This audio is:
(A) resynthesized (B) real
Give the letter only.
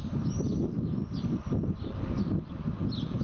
A